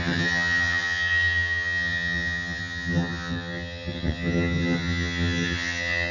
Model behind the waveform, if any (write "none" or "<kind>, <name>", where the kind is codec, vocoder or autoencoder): vocoder, HiFi-GAN